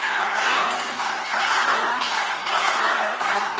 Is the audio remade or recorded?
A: remade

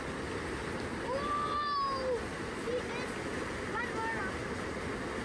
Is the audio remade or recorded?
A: recorded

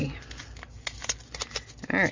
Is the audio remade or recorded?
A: recorded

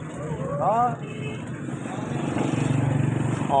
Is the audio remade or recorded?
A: recorded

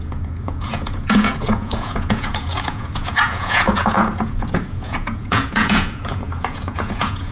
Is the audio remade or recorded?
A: remade